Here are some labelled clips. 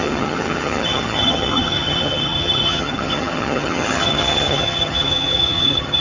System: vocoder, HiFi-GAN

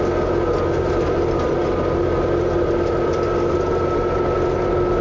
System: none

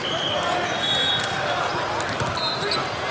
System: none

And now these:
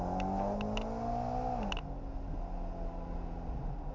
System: none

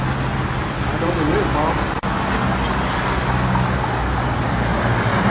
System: none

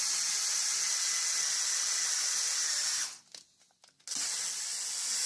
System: none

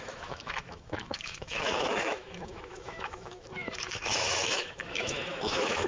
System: autoencoder, DAC-VAE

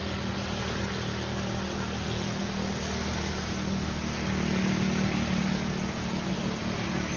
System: none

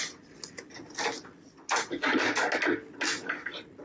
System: none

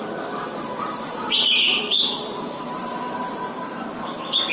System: vocoder, BigVGAN v2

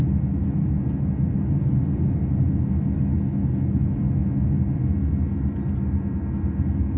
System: none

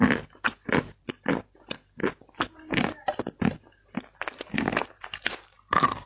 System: none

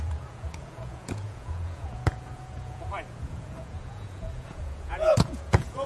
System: vocoder, Vocos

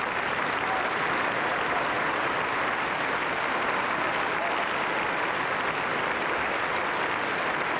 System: none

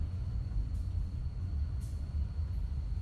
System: vocoder, Vocos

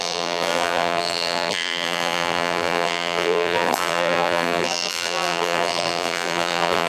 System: vocoder, BigVGAN v2